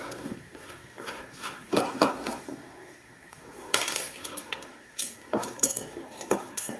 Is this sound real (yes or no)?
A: no